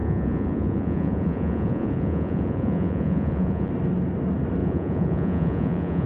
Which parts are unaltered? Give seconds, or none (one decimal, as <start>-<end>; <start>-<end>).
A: 3.7-4.6